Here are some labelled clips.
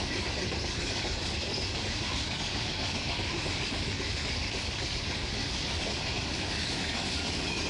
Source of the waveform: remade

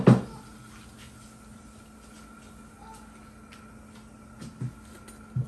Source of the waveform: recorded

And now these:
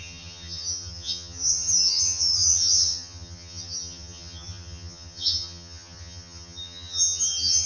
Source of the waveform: remade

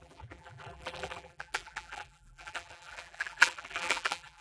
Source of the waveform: remade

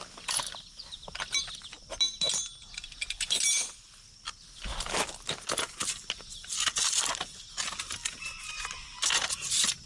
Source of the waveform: recorded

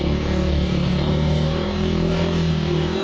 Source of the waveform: remade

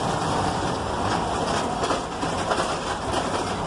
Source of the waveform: recorded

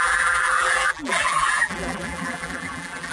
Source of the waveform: remade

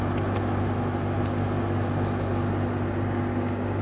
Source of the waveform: recorded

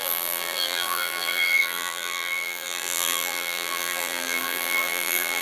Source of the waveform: remade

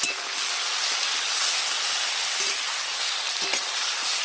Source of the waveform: recorded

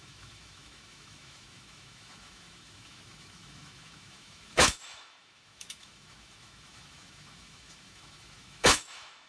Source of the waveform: remade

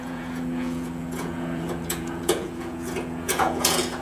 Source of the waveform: remade